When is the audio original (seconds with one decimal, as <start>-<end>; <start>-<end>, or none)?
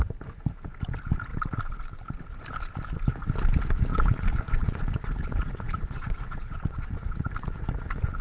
0.0-3.9; 7.3-8.2